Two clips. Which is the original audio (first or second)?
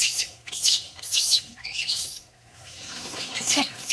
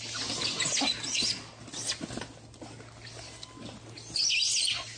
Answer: second